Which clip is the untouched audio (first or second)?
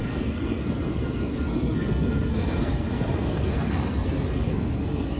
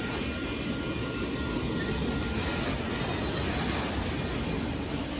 second